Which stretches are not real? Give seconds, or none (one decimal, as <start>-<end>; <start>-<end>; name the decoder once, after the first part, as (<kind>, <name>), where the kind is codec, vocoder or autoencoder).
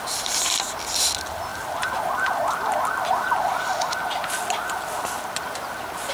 none